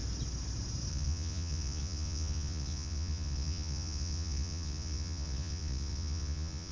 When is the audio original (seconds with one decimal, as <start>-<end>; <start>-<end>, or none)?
0.0-0.9